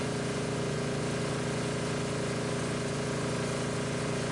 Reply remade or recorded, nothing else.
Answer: remade